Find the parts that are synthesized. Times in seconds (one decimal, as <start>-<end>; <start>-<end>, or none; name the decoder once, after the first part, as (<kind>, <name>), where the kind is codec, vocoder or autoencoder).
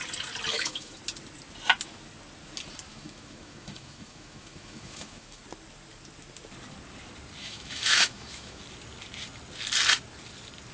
0.5-1.0 (autoencoder, DAC-VAE); 2.9-5.4; 7.4-8.6